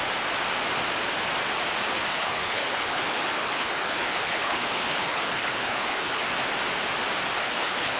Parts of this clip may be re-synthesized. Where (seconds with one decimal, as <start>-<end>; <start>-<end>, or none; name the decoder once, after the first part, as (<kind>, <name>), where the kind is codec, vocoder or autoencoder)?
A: 2.1-6.2 (codec, HILCodec); 7.4-8.0